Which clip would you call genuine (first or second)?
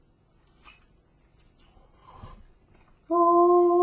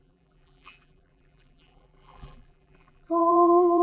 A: first